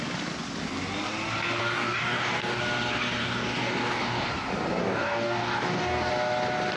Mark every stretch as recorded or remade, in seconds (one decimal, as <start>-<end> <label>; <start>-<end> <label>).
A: 0.0-1.6 recorded; 1.6-2.6 remade; 2.6-3.2 recorded; 3.2-4.3 remade; 4.3-4.8 recorded; 4.8-6.1 remade; 6.1-6.8 recorded